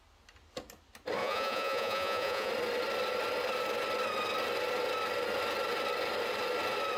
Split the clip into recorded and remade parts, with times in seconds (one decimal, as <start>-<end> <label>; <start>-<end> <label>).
0.0-1.2 recorded; 1.2-2.5 remade; 2.5-7.0 recorded

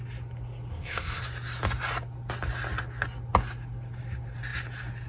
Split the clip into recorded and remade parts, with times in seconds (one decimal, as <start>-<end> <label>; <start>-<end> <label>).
0.0-0.7 recorded; 0.7-1.2 remade; 1.2-5.1 recorded